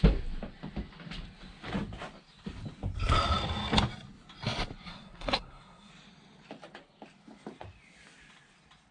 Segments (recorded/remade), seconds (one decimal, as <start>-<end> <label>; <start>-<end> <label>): 0.0-4.9 recorded; 4.9-5.9 remade; 5.9-8.9 recorded